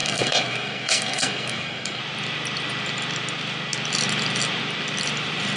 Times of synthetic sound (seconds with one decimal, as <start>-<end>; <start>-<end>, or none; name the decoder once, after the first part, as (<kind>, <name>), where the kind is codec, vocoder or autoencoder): 0.0-2.0 (codec, SNAC)